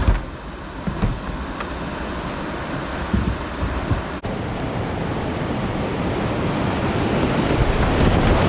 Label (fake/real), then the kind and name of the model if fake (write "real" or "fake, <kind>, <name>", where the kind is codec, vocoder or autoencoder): real